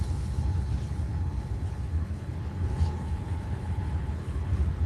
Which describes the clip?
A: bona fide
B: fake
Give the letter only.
B